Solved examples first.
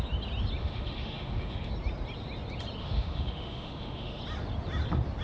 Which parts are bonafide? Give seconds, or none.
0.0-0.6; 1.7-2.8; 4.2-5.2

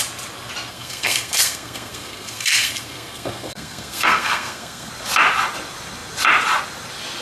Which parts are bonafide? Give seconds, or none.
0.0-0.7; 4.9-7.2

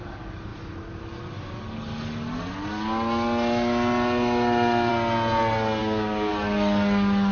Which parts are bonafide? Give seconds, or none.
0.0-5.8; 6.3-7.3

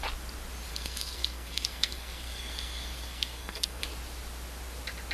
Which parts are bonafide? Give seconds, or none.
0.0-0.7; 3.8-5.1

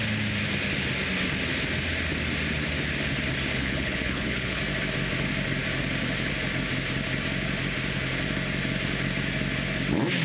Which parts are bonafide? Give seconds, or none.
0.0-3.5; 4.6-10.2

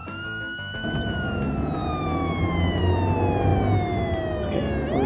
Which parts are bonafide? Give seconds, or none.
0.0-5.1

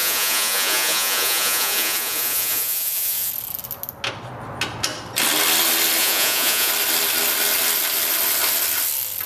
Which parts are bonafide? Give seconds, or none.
3.3-6.0; 6.7-9.3